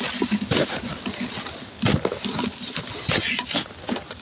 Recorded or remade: recorded